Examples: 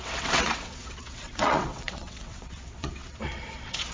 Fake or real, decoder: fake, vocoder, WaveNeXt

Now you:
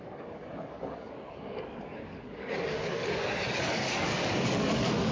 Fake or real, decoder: fake, codec, DAC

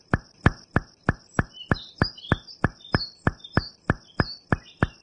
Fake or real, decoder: real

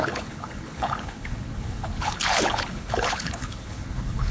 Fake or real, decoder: fake, codec, HILCodec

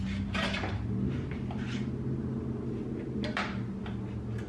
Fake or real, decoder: real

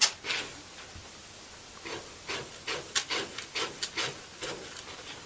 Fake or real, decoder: real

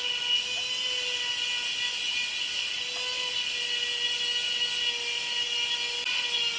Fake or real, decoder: real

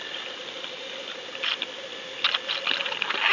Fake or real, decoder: real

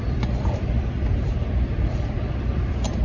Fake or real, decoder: fake, vocoder, BigVGAN v2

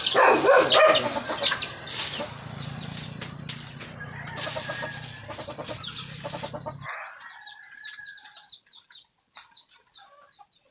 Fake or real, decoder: real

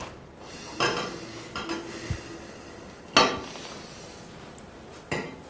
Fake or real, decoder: real